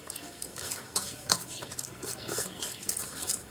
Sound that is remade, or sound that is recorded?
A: remade